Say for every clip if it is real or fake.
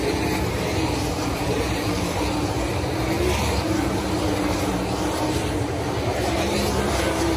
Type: fake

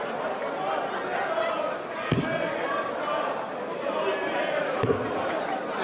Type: real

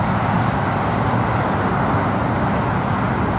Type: real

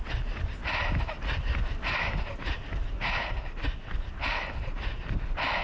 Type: real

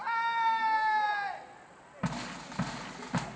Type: real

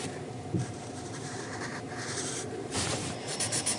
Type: fake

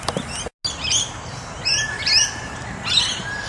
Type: real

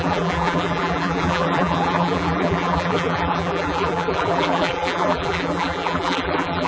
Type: fake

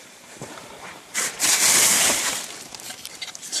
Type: fake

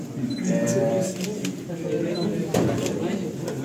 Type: real